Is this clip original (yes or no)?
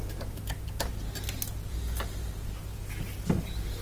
yes